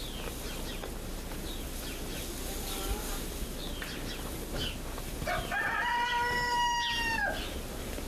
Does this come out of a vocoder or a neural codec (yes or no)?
no